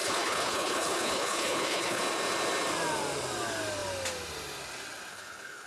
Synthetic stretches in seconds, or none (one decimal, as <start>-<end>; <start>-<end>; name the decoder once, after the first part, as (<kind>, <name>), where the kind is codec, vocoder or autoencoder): 0.0-2.0 (codec, HILCodec); 5.1-5.7

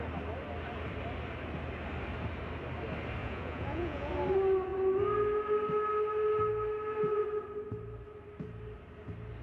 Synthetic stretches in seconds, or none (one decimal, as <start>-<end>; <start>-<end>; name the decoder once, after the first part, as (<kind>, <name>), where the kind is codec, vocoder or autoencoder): 3.2-4.1 (vocoder, Vocos)

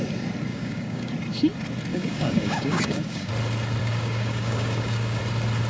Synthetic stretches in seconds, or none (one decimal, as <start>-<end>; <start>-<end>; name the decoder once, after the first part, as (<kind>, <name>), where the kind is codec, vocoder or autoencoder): 0.5-1.1 (codec, DAC); 1.9-3.3; 3.8-5.2